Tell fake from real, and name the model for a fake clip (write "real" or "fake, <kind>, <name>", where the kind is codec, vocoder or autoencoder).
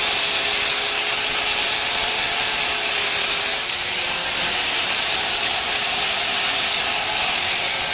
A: real